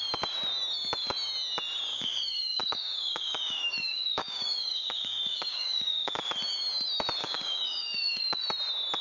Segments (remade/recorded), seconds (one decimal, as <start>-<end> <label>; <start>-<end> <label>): 0.0-1.9 recorded; 1.9-6.2 remade; 6.2-7.2 recorded; 7.2-8.2 remade; 8.2-9.0 recorded